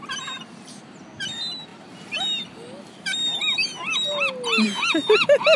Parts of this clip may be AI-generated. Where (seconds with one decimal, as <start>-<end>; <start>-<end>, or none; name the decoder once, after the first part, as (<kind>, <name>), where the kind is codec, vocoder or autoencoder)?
none